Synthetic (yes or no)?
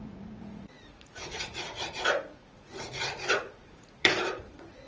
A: yes